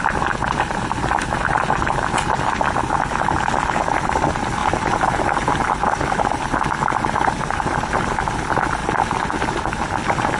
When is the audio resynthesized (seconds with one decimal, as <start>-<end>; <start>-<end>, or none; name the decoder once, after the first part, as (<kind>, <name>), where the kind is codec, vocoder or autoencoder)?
none

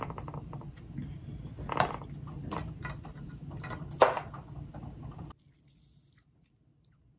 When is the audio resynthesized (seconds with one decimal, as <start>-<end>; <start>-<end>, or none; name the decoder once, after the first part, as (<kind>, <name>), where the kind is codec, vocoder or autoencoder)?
none

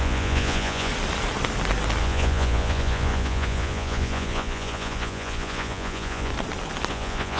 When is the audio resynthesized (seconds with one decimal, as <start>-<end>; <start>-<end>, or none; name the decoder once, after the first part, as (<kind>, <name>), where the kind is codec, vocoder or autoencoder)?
0.0-0.9 (vocoder, Vocos); 2.0-6.3; 6.9-7.4